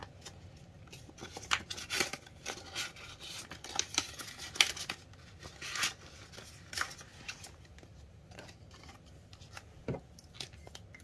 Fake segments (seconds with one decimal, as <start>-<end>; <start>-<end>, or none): 7.1-9.1